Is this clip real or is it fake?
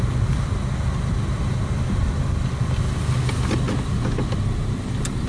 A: real